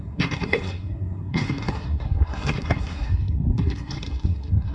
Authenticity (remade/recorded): remade